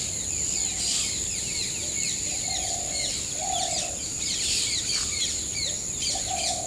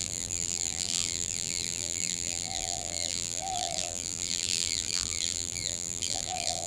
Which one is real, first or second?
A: first